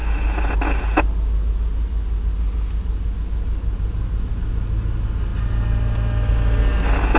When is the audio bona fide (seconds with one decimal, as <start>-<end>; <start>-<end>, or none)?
0.0-7.2